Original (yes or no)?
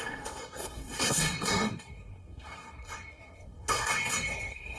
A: no